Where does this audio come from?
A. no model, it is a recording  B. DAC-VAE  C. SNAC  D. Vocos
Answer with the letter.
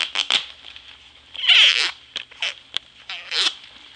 A